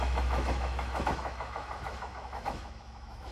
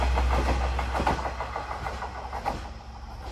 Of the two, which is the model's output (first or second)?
first